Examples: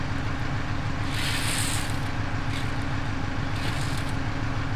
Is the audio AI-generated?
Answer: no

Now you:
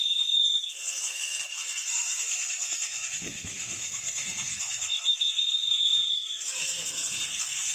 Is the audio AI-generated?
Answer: yes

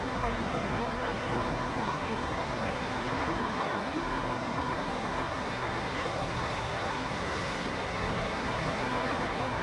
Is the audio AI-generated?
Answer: yes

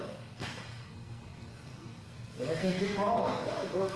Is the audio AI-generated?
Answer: yes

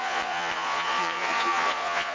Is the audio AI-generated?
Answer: yes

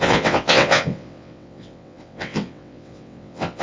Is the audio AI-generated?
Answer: yes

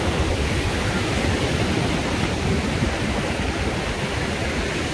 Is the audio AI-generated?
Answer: no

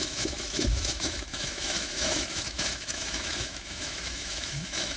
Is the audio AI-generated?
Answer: yes